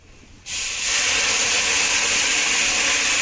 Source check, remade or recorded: recorded